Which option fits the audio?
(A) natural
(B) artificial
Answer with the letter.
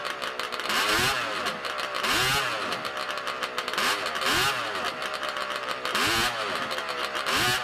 A